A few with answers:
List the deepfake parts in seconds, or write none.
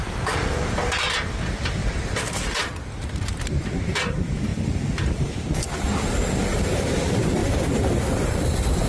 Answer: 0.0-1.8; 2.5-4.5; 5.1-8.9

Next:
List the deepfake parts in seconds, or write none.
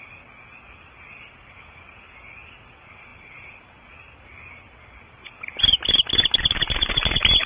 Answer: none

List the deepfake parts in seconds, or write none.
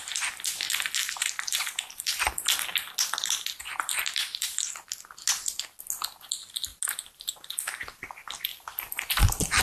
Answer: 1.0-2.8; 3.6-4.6; 6.7-7.3; 8.5-9.6